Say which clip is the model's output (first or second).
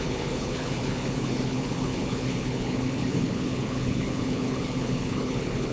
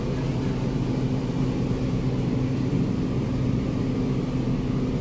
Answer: first